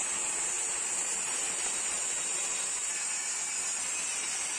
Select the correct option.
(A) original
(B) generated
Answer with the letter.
A